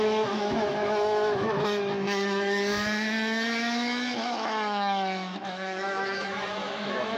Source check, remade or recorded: remade